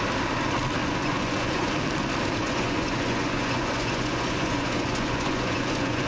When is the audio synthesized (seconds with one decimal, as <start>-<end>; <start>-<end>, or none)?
0.8-1.7; 2.4-6.1